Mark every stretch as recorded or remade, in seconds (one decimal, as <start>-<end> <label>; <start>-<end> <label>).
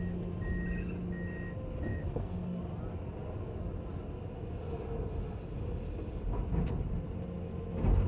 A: 0.0-1.9 recorded; 1.9-2.6 remade; 2.6-8.1 recorded